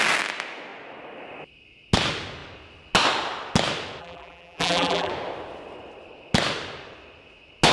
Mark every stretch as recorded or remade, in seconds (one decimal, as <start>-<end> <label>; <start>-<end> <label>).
0.0-4.0 recorded; 4.0-5.1 remade; 5.1-7.7 recorded